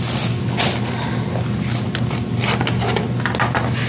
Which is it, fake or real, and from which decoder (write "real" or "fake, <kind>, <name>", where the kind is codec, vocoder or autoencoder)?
real